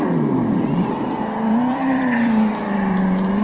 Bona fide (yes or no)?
no